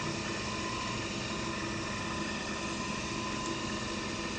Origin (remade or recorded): recorded